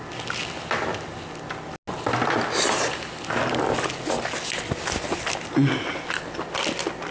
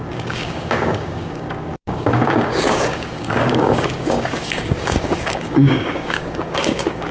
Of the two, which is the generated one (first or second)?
second